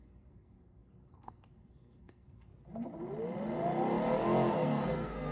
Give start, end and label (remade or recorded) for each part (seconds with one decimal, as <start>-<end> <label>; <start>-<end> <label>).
0.0-2.5 remade; 2.5-4.5 recorded; 4.5-5.3 remade